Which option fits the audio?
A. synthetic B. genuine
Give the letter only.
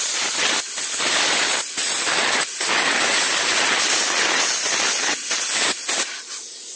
B